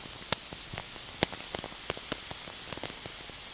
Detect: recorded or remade recorded